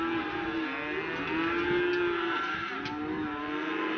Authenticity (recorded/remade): recorded